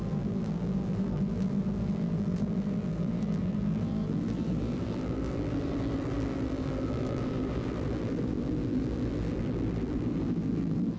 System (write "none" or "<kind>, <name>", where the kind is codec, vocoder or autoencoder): vocoder, BigVGAN v2